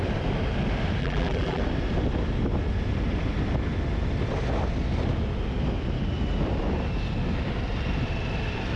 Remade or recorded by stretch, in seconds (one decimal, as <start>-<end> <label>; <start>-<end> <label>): 0.0-1.0 recorded; 1.0-1.6 remade; 1.6-8.8 recorded